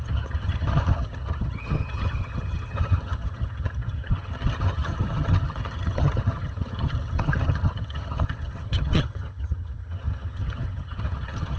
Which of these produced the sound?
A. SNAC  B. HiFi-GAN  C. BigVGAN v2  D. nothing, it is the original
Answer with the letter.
B